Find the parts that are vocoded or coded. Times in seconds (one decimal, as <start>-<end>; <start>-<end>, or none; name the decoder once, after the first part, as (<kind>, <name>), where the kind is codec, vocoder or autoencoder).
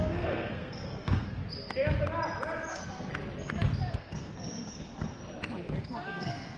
0.0-1.4 (codec, SNAC); 2.7-3.1; 3.9-5.2; 5.8-6.6